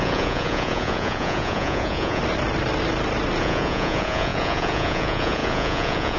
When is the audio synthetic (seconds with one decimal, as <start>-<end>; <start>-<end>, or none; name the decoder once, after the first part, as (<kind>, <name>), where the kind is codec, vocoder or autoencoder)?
0.0-2.2 (vocoder, Vocos); 3.4-6.2